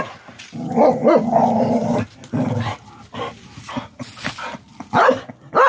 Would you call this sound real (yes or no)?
yes